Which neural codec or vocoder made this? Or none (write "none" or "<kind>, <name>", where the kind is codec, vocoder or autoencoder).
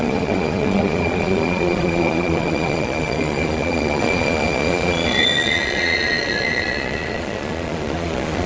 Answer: vocoder, Vocos